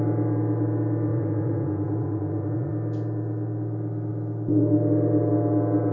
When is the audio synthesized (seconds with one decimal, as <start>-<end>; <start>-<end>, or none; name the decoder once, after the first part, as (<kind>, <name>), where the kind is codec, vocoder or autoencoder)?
1.1-2.7 (vocoder, Vocos)